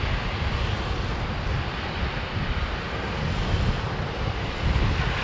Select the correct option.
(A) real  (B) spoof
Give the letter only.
A